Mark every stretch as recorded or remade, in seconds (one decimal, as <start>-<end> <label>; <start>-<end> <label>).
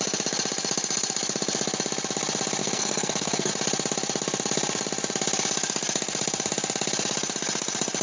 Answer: 0.0-2.6 recorded; 2.6-3.5 remade; 3.5-8.0 recorded